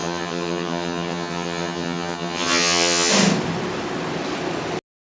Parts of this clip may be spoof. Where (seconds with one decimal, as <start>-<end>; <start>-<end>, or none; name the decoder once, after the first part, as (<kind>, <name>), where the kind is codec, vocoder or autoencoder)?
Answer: 0.0-3.1 (vocoder, HiFi-GAN)